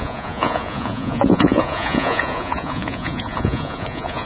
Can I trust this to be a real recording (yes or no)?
no